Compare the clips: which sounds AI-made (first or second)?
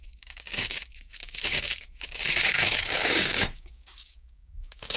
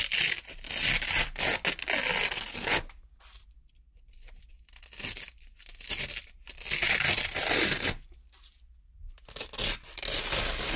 first